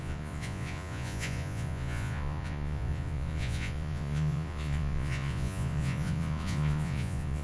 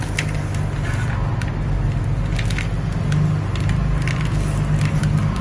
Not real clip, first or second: first